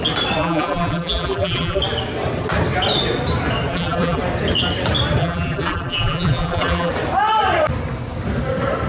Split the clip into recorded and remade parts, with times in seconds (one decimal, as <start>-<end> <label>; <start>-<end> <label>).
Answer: 0.0-0.4 recorded; 0.4-1.8 remade; 1.8-3.7 recorded; 3.7-4.2 remade; 4.2-5.2 recorded; 5.2-6.9 remade; 6.9-8.9 recorded

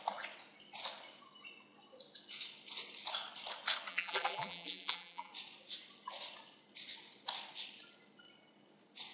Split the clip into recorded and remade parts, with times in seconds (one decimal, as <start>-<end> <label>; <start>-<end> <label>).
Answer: 0.0-3.9 recorded; 3.9-5.3 remade; 5.3-9.1 recorded

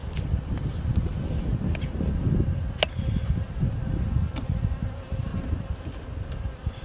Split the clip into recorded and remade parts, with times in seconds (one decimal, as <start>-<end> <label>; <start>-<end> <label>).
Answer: 0.0-1.4 remade; 1.4-5.3 recorded; 5.3-6.2 remade; 6.2-6.8 recorded

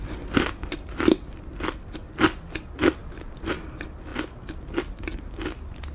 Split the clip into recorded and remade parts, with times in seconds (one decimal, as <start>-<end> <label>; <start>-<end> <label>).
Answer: 0.0-0.6 recorded; 0.6-1.4 remade; 1.4-5.9 recorded